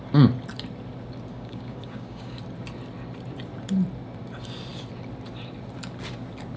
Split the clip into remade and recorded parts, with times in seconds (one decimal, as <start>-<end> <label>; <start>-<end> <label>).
0.0-1.3 recorded; 1.3-2.4 remade; 2.4-6.6 recorded

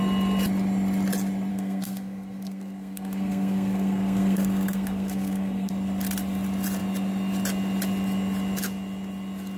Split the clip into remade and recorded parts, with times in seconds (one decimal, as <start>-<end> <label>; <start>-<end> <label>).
0.0-1.5 recorded; 1.5-5.7 remade; 5.7-9.6 recorded

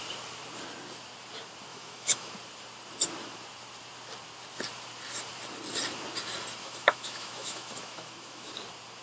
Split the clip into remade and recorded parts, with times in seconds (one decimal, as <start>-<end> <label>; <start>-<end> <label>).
0.0-1.7 recorded; 1.7-2.3 remade; 2.3-6.6 recorded; 6.6-8.5 remade; 8.5-9.0 recorded

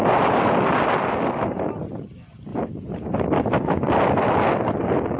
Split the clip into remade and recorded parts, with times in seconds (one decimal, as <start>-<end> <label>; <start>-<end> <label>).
0.0-5.2 recorded

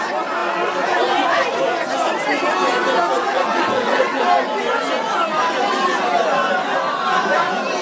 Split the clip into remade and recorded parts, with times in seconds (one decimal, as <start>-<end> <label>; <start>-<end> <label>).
0.0-3.3 recorded; 3.3-4.2 remade; 4.2-7.8 recorded